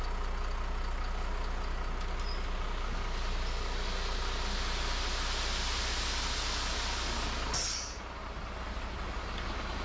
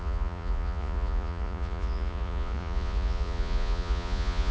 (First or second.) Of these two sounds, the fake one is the second